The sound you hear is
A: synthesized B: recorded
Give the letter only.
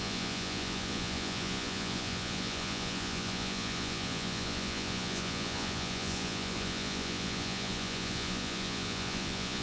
A